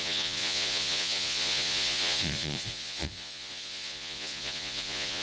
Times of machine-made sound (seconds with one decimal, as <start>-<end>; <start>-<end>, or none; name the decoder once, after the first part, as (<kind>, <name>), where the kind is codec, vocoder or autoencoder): 0.0-5.2 (vocoder, Vocos)